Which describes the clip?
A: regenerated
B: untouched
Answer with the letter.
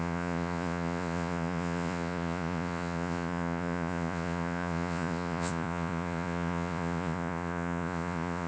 A